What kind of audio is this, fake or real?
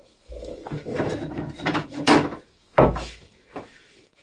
fake